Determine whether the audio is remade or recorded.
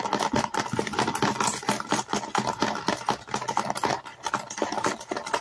recorded